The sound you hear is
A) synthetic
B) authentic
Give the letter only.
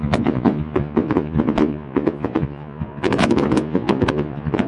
A